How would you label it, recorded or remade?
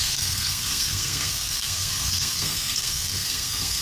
remade